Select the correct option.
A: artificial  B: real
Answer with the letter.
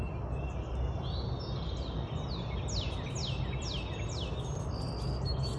B